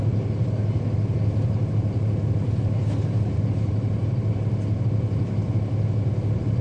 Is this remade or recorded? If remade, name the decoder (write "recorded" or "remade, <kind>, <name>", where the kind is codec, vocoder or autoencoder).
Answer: recorded